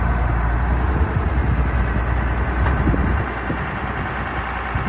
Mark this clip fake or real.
real